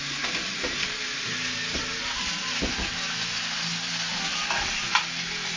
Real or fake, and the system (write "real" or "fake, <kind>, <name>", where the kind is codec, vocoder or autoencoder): real